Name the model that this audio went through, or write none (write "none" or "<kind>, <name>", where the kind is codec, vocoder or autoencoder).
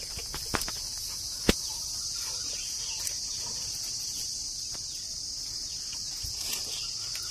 none